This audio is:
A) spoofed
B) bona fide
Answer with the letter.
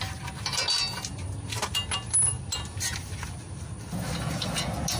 B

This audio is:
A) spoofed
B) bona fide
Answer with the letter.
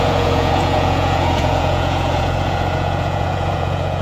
A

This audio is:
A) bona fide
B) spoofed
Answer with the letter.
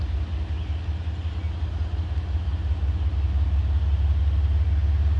A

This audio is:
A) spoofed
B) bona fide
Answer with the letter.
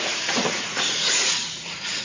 A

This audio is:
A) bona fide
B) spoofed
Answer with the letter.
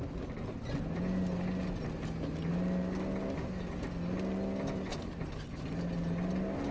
A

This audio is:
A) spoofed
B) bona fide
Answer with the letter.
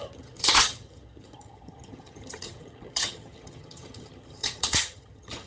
A